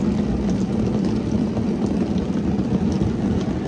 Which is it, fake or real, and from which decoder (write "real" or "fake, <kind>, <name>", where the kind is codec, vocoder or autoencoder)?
real